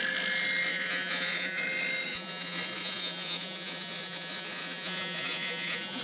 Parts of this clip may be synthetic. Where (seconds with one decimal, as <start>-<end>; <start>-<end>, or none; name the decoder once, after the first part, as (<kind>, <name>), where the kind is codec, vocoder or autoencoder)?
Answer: 0.7-1.6 (vocoder, Vocos); 2.1-6.0